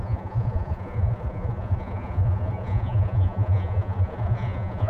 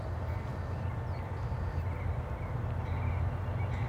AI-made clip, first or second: first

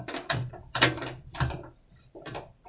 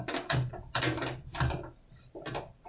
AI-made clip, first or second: first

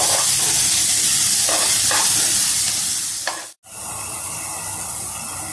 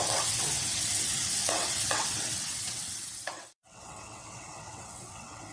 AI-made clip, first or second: second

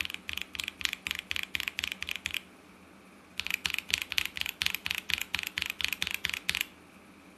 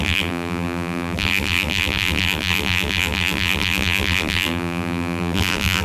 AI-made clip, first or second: second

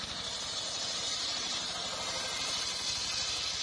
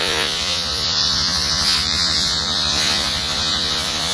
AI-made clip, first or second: second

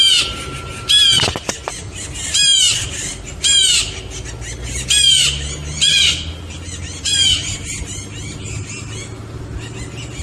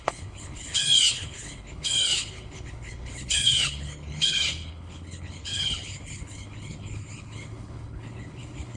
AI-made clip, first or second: second